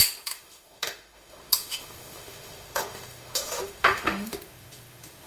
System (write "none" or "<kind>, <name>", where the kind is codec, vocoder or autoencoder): autoencoder, DAC-VAE